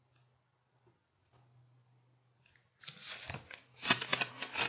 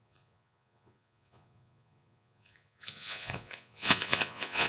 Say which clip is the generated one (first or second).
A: second